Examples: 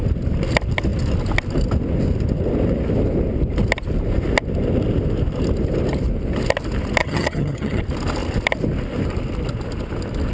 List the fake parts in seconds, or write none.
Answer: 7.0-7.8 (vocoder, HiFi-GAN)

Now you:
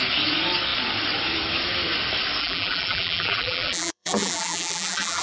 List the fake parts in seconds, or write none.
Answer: 2.4-5.2 (vocoder, BigVGAN v2)

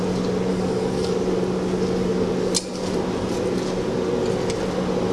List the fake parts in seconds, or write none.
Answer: 0.5-1.1 (codec, DAC)

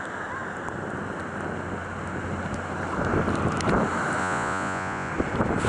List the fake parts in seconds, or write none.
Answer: 4.2-5.1 (vocoder, Vocos)

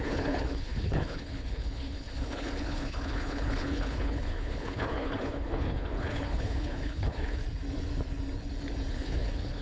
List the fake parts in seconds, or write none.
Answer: 0.0-7.4 (codec, HILCodec); 8.9-9.6

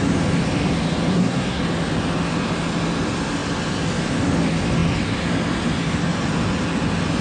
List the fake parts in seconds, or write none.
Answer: 1.1-1.6 (codec, SNAC)

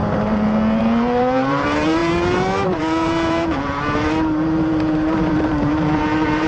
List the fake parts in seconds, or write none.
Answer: 0.8-6.5 (vocoder, BigVGAN v2)

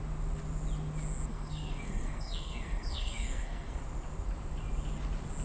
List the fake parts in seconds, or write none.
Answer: 1.3-3.8 (codec, SNAC)